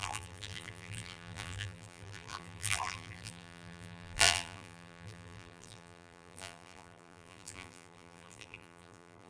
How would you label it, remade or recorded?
remade